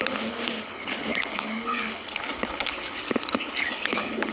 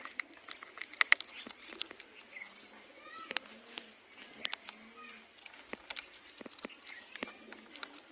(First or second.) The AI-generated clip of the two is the first